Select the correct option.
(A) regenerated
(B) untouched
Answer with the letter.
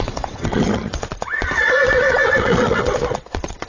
A